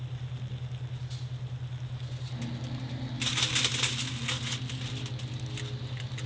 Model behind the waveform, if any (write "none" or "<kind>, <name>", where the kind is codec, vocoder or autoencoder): none